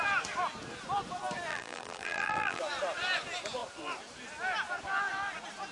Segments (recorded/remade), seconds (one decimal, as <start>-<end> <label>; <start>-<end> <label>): 0.0-1.5 recorded; 1.5-2.6 remade; 2.6-5.7 recorded